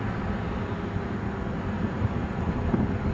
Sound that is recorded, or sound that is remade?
recorded